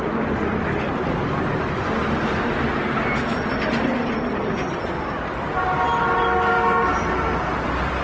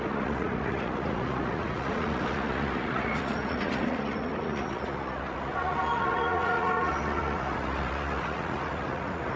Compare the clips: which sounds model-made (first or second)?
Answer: second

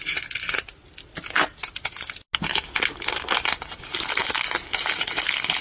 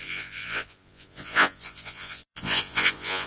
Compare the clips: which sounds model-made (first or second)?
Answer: second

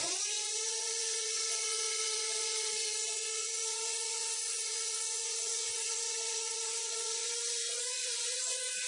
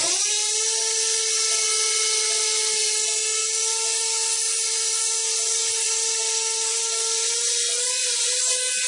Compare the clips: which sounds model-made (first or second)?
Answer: first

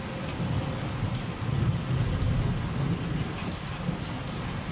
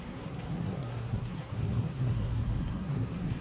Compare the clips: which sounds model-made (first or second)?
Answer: second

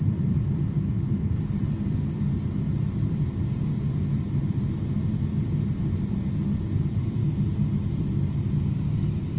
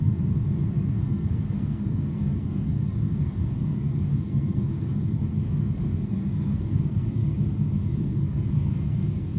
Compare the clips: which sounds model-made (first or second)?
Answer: second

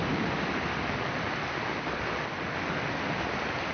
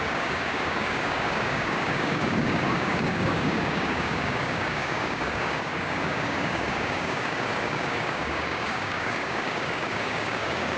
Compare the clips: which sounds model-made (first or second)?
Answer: second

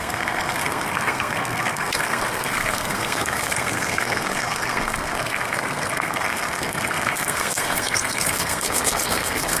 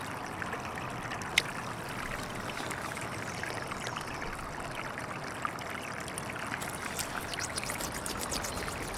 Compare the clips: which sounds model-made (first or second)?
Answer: first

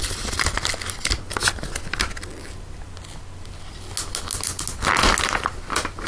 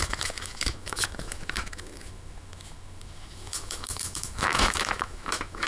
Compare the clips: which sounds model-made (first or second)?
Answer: second